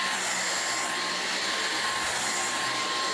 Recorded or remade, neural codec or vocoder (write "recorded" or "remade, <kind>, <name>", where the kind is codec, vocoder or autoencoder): recorded